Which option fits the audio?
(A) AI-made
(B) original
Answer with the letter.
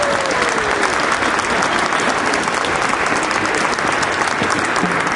B